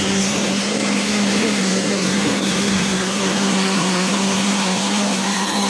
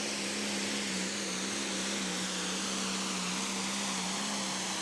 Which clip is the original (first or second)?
second